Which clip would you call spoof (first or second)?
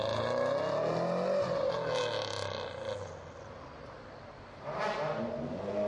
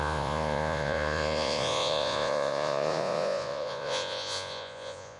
second